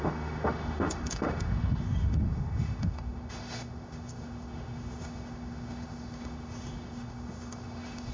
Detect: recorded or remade remade